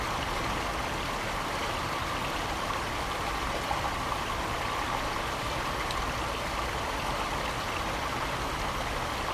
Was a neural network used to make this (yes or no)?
no